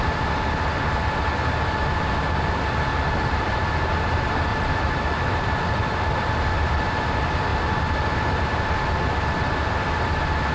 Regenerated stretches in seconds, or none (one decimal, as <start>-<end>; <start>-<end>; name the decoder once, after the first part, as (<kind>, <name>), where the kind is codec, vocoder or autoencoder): 2.9-3.5 (vocoder, BigVGAN v2); 4.5-6.1